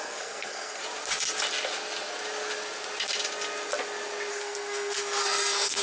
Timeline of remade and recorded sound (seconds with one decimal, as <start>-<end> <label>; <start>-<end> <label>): 0.0-0.8 remade; 0.8-4.3 recorded; 4.3-5.8 remade